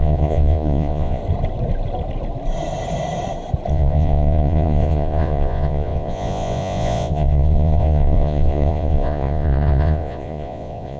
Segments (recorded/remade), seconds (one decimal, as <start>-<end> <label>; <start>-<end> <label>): 0.0-1.2 remade; 1.2-3.7 recorded; 3.7-11.0 remade